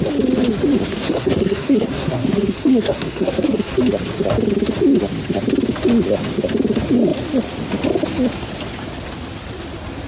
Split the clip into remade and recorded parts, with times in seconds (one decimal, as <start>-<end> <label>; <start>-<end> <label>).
0.0-0.9 recorded; 0.9-3.8 remade; 3.8-10.1 recorded